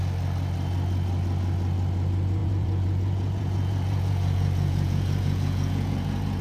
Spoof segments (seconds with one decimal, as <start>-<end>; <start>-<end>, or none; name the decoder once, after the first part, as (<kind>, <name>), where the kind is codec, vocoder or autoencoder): 2.4-6.4 (vocoder, Vocos)